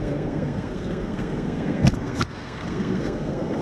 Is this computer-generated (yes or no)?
yes